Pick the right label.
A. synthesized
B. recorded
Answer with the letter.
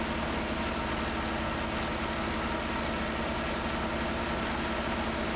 B